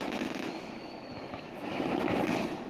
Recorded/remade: remade